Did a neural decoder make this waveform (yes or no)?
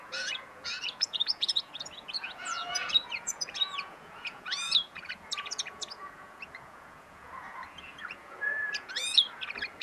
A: yes